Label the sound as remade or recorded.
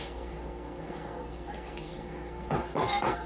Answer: remade